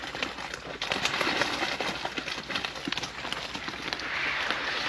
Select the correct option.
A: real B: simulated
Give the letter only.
A